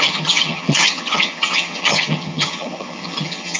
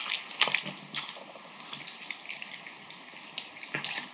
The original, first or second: second